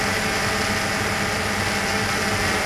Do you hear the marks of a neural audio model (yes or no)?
no